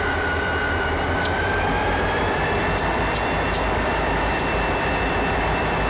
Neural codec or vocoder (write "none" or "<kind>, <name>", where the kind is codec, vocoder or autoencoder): vocoder, BigVGAN v2